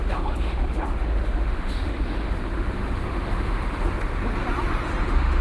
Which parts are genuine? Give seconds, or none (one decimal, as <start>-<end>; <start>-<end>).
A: 4.2-5.0